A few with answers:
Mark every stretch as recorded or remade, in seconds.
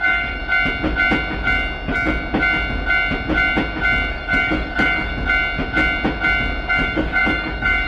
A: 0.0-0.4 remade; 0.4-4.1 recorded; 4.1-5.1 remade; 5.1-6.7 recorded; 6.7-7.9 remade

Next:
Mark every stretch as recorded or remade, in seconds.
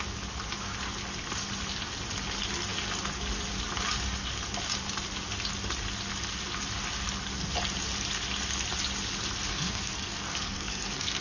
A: 0.0-9.5 recorded; 9.5-11.2 remade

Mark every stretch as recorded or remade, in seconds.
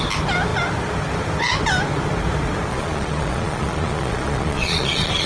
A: 0.0-2.7 recorded; 2.7-5.3 remade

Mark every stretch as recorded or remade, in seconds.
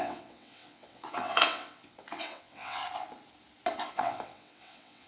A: 0.0-2.8 remade; 2.8-3.9 recorded; 3.9-5.1 remade